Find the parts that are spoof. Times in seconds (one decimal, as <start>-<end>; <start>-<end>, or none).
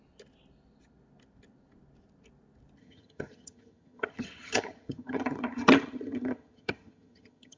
2.8-7.6